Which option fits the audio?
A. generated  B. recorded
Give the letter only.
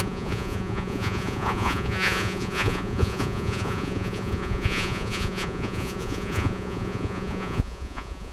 A